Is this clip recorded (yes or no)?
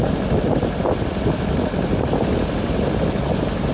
yes